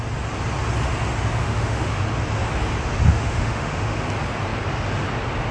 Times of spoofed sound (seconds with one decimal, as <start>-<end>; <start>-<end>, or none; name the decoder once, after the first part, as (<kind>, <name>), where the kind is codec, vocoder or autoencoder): 1.4-2.0 (autoencoder, DAC-VAE); 3.1-4.0

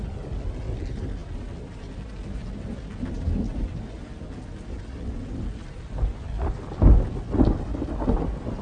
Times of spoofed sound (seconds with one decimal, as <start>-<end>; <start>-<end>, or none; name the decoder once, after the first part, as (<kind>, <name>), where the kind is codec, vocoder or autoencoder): none

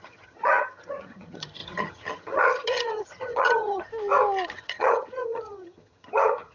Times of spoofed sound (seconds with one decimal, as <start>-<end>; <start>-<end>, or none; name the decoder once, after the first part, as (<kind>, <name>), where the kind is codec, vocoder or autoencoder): 0.0-3.9 (vocoder, HiFi-GAN); 4.6-6.5

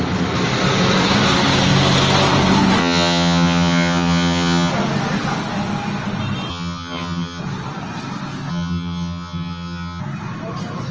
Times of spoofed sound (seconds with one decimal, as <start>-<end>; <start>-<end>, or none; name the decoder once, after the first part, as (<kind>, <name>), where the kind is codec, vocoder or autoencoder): 2.8-4.7 (vocoder, HiFi-GAN); 6.5-7.4; 8.5-10.0

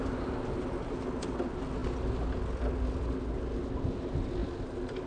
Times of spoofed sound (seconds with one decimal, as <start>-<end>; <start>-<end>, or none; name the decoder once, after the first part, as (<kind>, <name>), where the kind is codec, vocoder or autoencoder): none

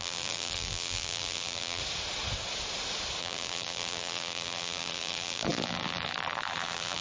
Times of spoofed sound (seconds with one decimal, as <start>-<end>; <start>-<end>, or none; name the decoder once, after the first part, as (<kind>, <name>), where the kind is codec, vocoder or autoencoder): 0.0-1.8 (vocoder, BigVGAN v2); 3.2-7.0